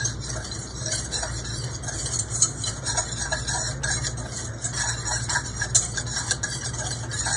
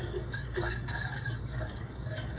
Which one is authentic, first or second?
first